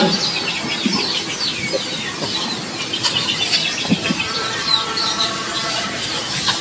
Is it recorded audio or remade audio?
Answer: remade